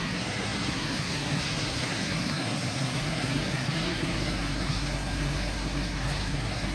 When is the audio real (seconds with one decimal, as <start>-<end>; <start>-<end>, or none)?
none